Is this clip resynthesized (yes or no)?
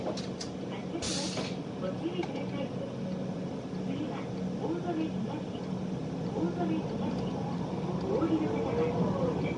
no